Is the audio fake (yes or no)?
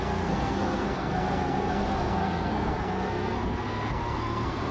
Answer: yes